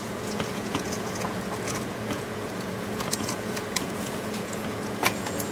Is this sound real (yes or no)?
no